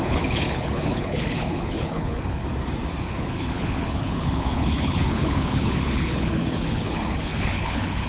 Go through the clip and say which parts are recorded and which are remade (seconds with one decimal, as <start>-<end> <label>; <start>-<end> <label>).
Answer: 0.0-2.4 remade; 2.4-3.1 recorded; 3.1-8.1 remade